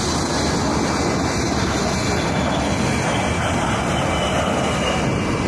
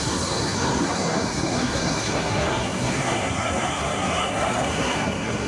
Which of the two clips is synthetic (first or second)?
second